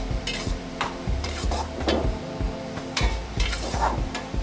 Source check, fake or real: fake